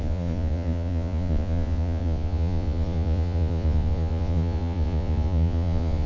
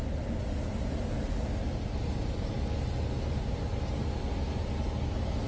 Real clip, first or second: second